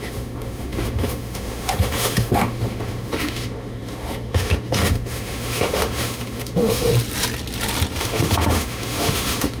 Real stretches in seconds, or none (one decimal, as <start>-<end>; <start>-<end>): 6.9-8.0